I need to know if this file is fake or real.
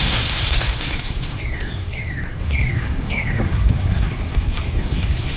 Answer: fake